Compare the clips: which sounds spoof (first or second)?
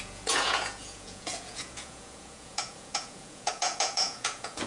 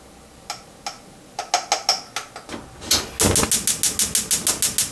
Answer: first